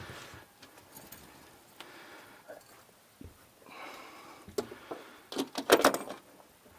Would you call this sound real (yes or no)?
yes